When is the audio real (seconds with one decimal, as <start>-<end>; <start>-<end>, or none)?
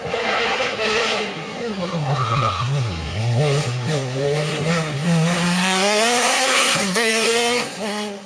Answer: none